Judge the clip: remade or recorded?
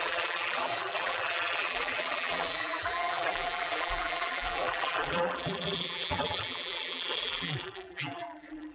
remade